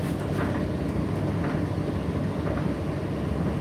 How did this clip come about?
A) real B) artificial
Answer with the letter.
A